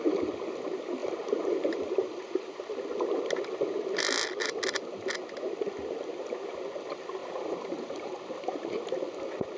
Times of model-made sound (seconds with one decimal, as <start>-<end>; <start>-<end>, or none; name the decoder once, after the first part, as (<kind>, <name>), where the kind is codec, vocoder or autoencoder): 1.0-2.7 (vocoder, BigVGAN v2); 7.2-8.1